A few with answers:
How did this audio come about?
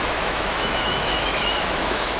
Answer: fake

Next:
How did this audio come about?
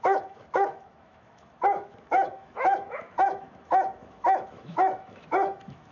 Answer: fake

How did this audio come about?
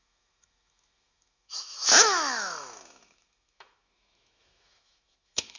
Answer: fake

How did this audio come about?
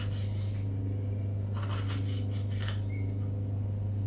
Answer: real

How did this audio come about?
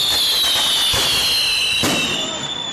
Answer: real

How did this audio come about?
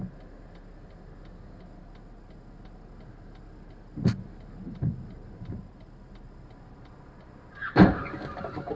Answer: real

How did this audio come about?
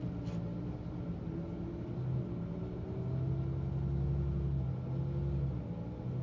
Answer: real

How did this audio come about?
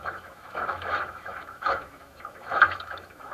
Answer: fake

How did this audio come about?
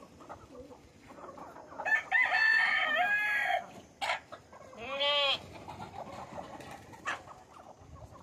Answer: real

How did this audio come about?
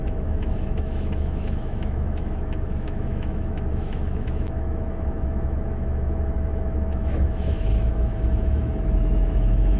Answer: fake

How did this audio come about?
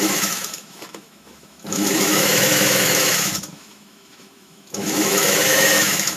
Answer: fake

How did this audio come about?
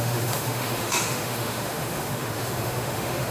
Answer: fake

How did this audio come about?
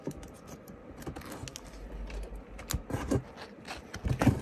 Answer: real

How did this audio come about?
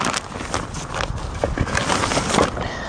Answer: real